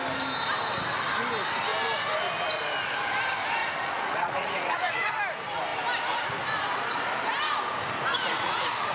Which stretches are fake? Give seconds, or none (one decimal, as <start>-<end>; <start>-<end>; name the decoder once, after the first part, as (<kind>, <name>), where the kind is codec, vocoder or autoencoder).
3.6-5.1 (vocoder, Vocos); 8.1-8.9